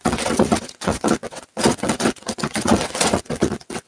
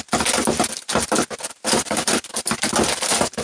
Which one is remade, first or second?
first